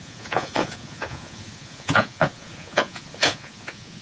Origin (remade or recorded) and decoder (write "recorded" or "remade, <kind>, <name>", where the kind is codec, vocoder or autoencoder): remade, vocoder, Vocos